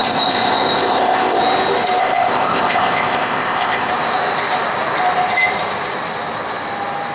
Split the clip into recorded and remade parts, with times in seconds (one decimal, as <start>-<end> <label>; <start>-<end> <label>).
0.0-1.4 remade; 1.4-2.0 recorded; 2.0-3.9 remade; 3.9-7.1 recorded